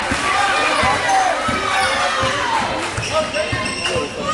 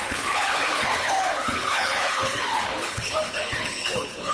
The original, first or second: first